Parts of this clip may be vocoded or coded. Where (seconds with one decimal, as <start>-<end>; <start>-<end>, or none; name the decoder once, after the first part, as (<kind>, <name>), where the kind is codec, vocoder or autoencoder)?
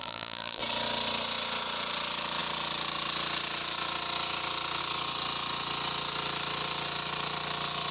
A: 0.0-0.6 (vocoder, BigVGAN v2)